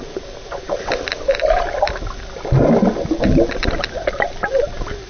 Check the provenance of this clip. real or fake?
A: real